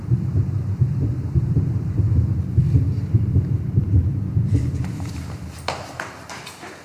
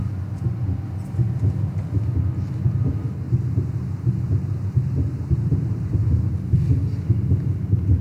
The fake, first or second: first